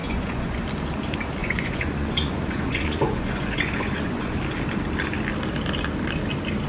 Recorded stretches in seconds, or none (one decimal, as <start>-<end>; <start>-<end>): 0.6-1.4; 4.4-6.7